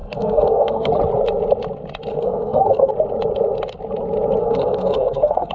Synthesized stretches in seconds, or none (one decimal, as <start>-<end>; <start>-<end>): 0.0-0.9; 2.1-2.9; 4.4-5.5